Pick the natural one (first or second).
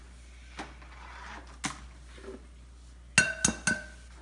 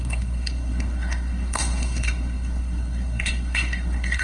first